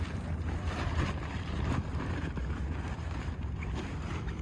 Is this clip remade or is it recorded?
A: remade